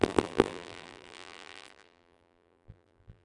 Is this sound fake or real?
fake